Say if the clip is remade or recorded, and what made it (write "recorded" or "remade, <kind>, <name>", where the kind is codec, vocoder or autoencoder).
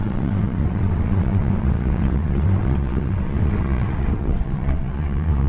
remade, vocoder, WaveNeXt